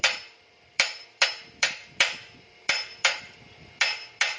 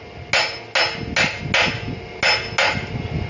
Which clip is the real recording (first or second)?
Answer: second